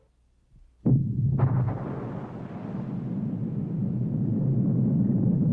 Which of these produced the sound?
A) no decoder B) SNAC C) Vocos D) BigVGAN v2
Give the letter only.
A